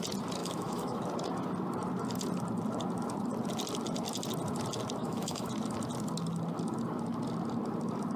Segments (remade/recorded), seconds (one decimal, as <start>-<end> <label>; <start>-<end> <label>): 0.0-0.4 recorded; 0.4-1.0 remade; 1.0-5.0 recorded; 5.0-5.5 remade; 5.5-8.2 recorded